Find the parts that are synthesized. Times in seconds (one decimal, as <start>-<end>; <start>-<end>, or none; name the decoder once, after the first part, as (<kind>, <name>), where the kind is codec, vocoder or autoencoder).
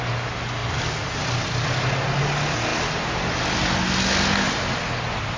none